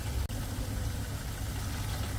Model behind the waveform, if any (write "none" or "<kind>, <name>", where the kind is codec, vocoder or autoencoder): none